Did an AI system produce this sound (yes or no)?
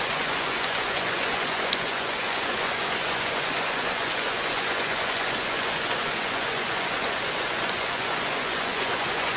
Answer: yes